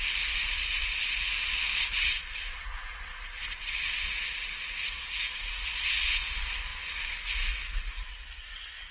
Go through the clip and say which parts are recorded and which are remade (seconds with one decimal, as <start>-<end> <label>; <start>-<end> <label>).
0.0-8.9 recorded